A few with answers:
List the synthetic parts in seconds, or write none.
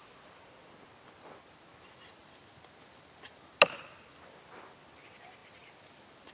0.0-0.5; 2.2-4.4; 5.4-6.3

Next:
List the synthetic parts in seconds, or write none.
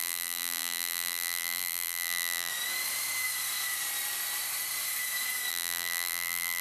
0.0-2.5; 5.5-6.6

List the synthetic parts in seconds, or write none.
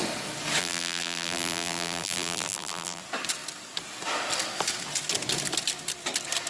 0.6-3.0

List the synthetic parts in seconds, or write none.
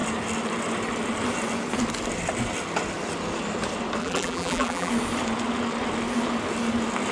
4.0-4.9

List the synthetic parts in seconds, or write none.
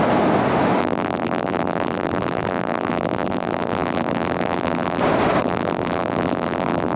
0.8-5.0; 5.4-7.0